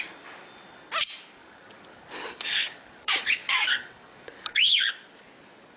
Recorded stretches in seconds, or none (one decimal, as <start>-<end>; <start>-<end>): 0.0-1.4; 4.9-5.8